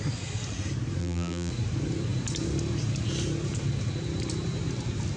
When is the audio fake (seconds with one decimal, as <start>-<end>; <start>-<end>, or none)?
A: 1.0-1.5